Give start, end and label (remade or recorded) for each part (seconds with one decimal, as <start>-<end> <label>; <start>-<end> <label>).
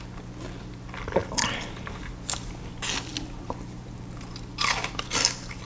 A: 0.0-5.7 recorded